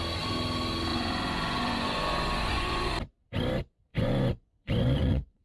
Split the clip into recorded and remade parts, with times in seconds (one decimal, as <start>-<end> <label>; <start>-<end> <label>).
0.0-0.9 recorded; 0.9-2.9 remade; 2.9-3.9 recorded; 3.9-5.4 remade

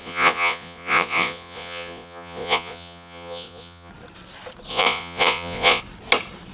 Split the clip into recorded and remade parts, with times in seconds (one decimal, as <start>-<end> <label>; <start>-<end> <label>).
0.0-3.9 remade; 3.9-4.7 recorded; 4.7-5.8 remade; 5.8-6.5 recorded

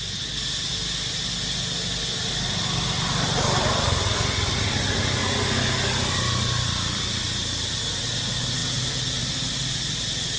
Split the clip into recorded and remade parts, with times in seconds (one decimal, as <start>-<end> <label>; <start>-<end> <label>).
0.0-10.4 recorded

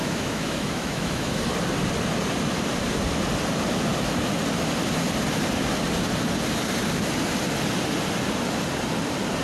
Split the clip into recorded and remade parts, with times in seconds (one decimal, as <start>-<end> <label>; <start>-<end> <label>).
0.0-1.4 remade; 1.4-9.4 recorded

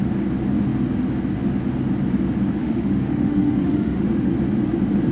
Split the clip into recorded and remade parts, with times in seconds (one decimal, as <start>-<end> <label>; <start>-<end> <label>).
0.0-2.6 recorded; 2.6-4.3 remade; 4.3-5.1 recorded

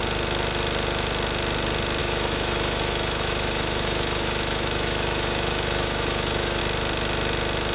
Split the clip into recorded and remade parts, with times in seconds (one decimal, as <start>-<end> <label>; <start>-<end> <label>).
0.0-2.0 recorded; 2.0-6.6 remade; 6.6-7.7 recorded

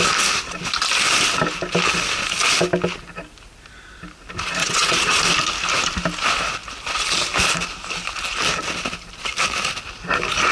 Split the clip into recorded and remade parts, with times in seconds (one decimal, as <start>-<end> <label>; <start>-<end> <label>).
0.0-4.6 recorded; 4.6-5.2 remade; 5.2-10.5 recorded

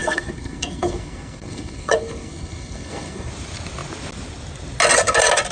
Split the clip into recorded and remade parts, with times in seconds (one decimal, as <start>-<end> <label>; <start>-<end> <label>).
0.0-3.3 remade; 3.3-5.5 recorded